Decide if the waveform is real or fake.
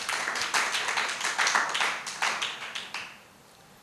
real